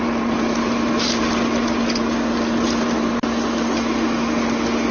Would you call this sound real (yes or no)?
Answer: yes